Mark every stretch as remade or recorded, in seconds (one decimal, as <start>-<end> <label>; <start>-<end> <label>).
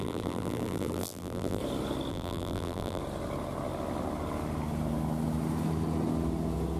0.0-1.6 remade; 1.6-2.1 recorded; 2.1-3.0 remade; 3.0-6.8 recorded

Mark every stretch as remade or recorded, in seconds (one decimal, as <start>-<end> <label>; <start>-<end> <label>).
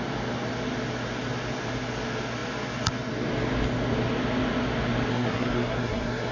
0.0-5.1 recorded; 5.1-6.3 remade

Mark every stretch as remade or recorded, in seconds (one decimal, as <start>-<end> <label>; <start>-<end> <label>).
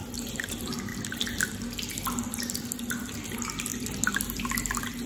0.0-5.1 recorded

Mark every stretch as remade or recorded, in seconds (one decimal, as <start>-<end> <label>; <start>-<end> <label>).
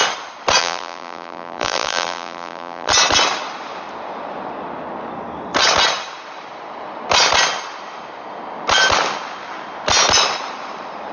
0.0-0.6 recorded; 0.6-2.9 remade; 2.9-11.1 recorded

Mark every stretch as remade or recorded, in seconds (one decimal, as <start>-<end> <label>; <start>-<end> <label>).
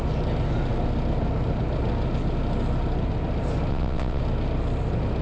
0.0-3.7 recorded; 3.7-4.2 remade; 4.2-5.2 recorded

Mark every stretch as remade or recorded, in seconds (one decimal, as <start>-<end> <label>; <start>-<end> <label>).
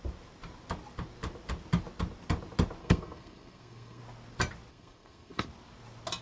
0.0-2.8 recorded; 2.8-4.0 remade; 4.0-4.7 recorded; 4.7-5.5 remade; 5.5-6.2 recorded